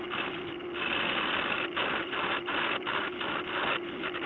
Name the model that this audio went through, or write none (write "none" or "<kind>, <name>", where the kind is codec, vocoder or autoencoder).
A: none